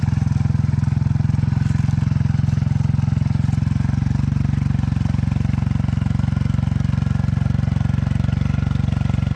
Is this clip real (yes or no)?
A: yes